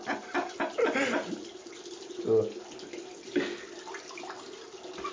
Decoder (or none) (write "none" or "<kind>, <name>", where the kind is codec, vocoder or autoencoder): none